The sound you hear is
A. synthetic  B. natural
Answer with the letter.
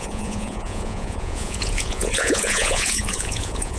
A